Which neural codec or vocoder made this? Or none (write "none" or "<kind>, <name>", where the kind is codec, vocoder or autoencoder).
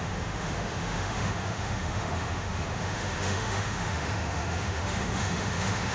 autoencoder, DAC-VAE